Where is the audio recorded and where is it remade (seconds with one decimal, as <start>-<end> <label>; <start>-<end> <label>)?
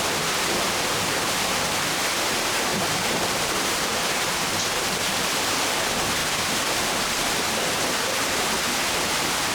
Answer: 0.0-2.7 recorded; 2.7-4.9 remade; 4.9-6.2 recorded; 6.2-6.9 remade; 6.9-9.5 recorded